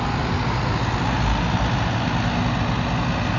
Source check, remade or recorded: recorded